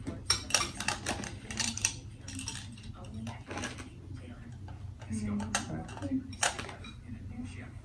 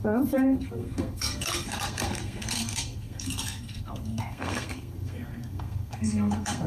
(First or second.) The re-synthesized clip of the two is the second